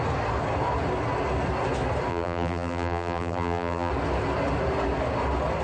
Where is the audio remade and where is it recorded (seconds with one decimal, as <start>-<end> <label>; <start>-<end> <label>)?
0.0-2.1 recorded; 2.1-3.9 remade; 3.9-5.6 recorded